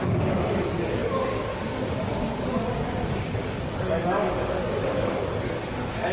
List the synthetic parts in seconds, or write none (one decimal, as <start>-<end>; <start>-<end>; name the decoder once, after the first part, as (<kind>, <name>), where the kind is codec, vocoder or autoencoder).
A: 0.0-6.1 (codec, DAC)

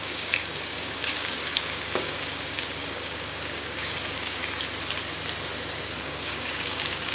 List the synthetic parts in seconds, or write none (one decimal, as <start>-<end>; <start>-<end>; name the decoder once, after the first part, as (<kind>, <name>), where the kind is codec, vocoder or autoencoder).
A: 0.0-4.4 (codec, DAC); 6.0-7.1